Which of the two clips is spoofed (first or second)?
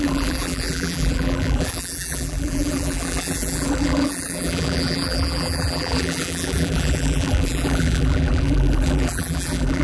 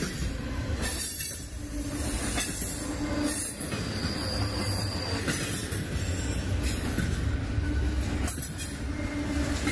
first